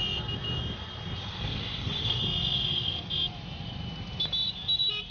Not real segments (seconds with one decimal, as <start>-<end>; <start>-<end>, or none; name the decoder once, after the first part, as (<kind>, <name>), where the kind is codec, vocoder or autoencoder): 1.3-3.1 (codec, SNAC)